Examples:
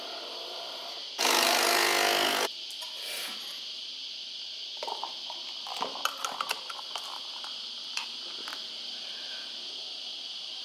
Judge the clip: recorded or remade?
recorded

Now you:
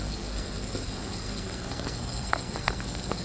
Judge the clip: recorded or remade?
remade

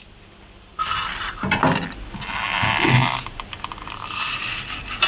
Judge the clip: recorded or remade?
recorded